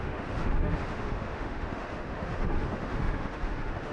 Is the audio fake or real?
fake